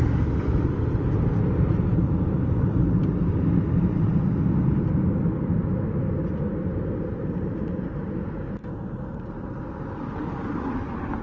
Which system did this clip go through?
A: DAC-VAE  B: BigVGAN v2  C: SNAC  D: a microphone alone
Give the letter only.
D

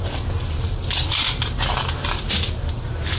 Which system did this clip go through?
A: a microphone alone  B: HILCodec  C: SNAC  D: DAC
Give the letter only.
A